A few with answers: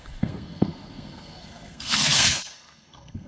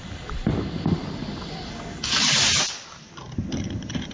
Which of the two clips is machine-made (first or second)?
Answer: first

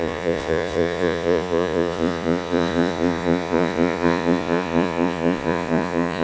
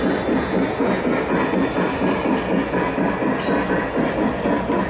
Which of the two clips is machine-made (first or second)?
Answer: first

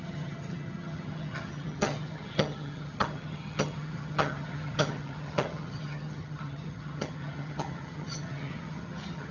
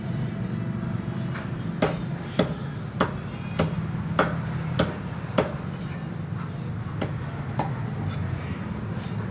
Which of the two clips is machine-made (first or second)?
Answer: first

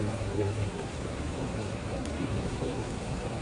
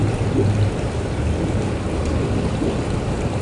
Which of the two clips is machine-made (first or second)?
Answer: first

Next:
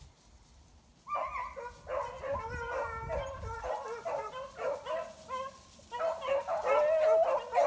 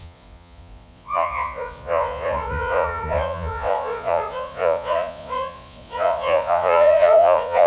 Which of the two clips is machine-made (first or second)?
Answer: second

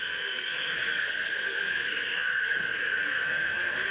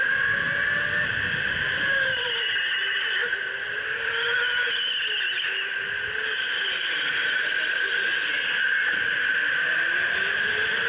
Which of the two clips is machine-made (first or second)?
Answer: first